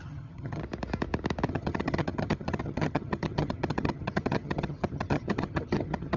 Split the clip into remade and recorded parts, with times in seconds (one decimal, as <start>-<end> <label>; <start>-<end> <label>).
0.0-0.6 remade; 0.6-1.5 recorded; 1.5-6.2 remade